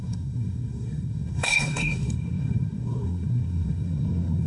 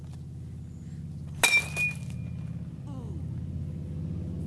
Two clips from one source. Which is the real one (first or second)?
second